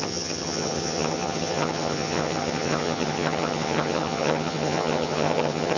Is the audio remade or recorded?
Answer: remade